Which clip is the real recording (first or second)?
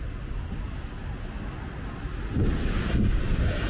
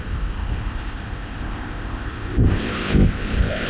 first